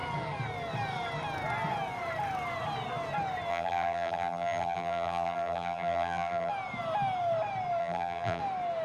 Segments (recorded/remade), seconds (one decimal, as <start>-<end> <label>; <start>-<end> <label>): 0.0-3.5 recorded; 3.5-6.5 remade; 6.5-7.8 recorded; 7.8-8.4 remade; 8.4-8.8 recorded